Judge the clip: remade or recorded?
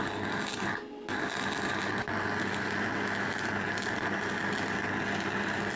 recorded